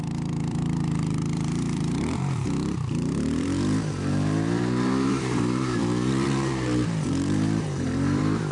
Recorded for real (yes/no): no